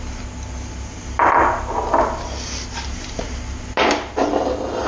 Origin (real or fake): real